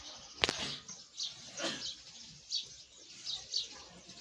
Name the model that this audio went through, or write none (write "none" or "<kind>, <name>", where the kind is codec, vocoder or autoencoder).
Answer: none